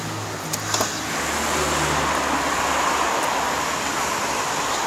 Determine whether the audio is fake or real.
real